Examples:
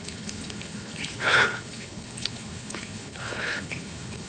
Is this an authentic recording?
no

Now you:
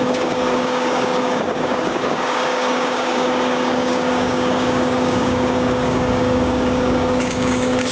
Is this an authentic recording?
no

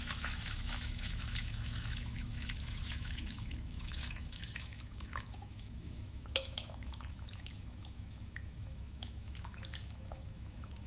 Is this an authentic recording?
no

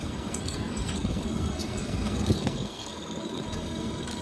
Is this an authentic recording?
no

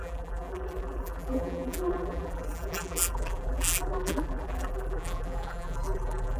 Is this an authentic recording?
no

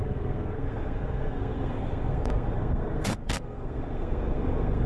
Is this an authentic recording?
no